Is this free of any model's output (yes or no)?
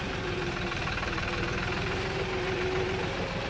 no